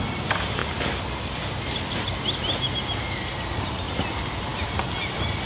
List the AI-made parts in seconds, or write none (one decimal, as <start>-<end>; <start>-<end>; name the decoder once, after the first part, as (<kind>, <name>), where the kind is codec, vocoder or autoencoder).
none